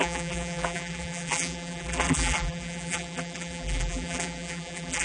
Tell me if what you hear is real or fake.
fake